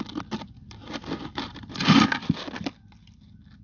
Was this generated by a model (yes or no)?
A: no